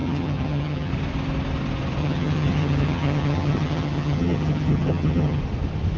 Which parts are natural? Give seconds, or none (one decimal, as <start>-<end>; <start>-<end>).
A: 0.9-2.0; 5.4-6.0